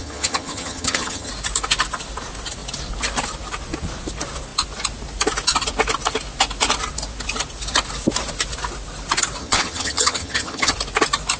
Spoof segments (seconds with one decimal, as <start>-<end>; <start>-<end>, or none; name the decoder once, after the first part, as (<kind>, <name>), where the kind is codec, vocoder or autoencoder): 0.0-1.3 (vocoder, HiFi-GAN); 9.4-10.7